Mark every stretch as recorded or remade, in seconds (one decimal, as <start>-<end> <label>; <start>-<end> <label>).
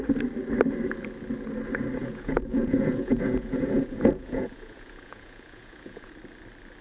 0.0-2.0 recorded; 2.0-6.1 remade; 6.1-6.8 recorded